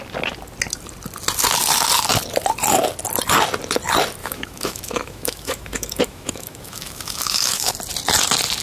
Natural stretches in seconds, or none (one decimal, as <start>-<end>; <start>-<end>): 0.0-4.2; 7.7-8.6

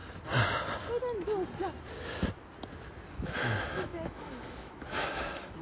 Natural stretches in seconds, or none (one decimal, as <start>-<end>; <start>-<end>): 0.0-3.1

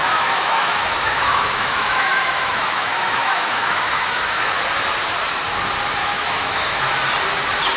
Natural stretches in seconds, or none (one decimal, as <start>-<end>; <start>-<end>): 4.6-6.0; 6.8-7.8

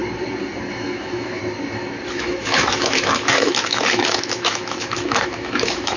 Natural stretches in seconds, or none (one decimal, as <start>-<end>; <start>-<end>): 0.0-0.7; 1.4-2.1

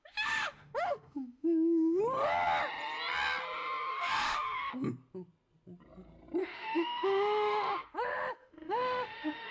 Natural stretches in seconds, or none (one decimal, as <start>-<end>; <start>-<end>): 2.0-3.9; 4.7-6.4

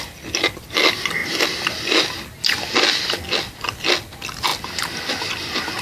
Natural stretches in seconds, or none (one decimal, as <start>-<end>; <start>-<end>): 0.0-5.8

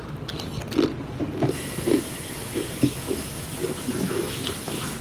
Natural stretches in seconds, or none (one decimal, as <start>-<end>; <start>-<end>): 0.0-2.1